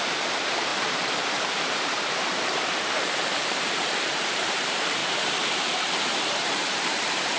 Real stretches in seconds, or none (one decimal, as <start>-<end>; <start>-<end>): 5.0-6.3